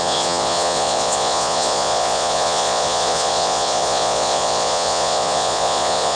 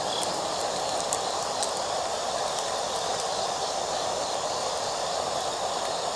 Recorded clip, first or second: second